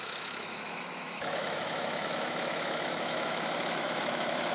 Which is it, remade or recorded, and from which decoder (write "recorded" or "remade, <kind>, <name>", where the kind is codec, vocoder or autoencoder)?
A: remade, autoencoder, DAC-VAE